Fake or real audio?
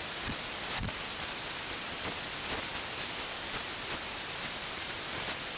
real